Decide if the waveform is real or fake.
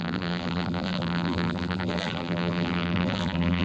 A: fake